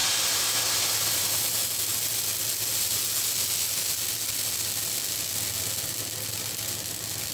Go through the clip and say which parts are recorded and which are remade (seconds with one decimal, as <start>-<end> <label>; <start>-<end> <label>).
0.0-7.3 recorded